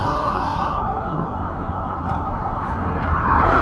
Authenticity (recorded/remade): remade